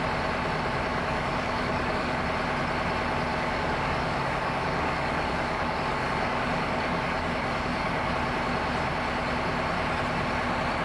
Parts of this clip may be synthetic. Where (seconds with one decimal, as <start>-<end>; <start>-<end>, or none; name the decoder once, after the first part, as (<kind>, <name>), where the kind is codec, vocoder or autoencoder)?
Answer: 0.9-2.2 (codec, DAC); 3.3-8.1